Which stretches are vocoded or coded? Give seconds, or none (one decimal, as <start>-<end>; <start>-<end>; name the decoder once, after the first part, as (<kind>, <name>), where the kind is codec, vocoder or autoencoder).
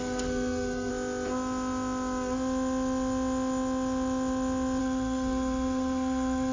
0.0-0.9 (codec, SNAC); 4.8-6.5